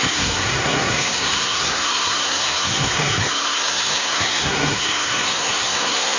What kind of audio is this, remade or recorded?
remade